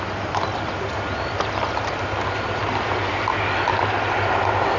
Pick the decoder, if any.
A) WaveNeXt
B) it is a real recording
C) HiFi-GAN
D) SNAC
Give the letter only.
B